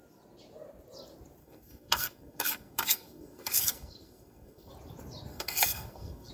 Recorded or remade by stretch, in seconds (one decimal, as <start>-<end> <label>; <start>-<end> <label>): 0.0-1.4 recorded; 1.4-4.7 remade; 4.7-5.3 recorded; 5.3-6.3 remade